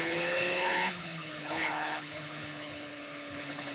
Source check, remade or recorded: remade